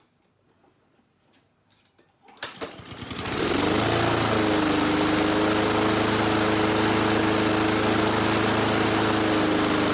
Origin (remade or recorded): recorded